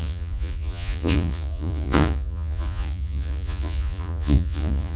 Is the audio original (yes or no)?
no